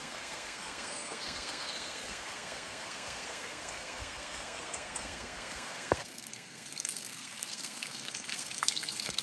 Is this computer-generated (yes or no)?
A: yes